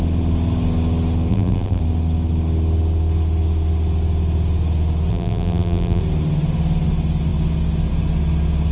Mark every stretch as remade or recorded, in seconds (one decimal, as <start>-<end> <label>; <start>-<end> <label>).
0.0-1.3 recorded; 1.3-1.8 remade; 1.8-5.1 recorded; 5.1-6.0 remade; 6.0-8.7 recorded